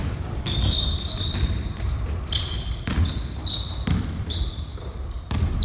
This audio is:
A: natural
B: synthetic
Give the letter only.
B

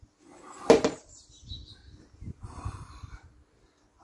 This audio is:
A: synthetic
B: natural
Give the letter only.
B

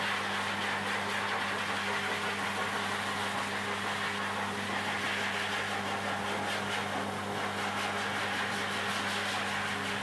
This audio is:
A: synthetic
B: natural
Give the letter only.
B